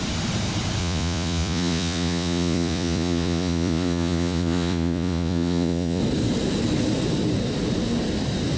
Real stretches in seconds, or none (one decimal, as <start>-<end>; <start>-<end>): 0.0-0.8; 6.0-8.6